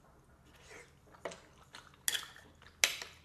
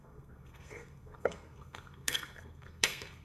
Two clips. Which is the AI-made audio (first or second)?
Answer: second